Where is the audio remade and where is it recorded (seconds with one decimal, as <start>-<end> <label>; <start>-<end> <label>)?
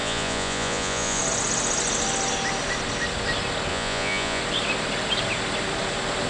0.0-1.2 remade; 1.2-3.7 recorded; 3.7-4.4 remade; 4.4-6.3 recorded